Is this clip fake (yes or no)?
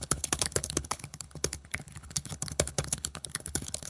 yes